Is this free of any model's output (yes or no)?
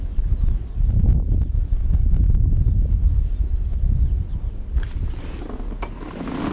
yes